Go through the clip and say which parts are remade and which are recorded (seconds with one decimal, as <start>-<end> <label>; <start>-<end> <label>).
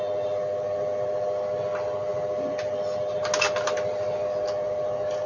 0.0-5.3 recorded